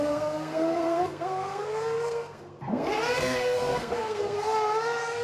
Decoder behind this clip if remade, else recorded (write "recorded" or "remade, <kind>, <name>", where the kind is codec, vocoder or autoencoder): remade, codec, SNAC